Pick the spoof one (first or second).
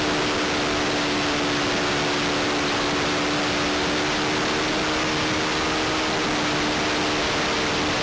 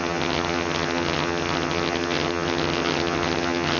second